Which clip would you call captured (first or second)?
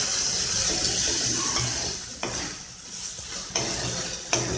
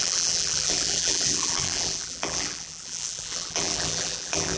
first